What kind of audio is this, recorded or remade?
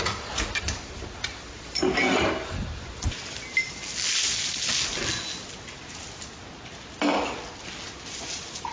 recorded